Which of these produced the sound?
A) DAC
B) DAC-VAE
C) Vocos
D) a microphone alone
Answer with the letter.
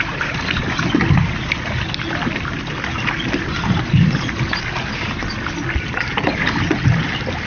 D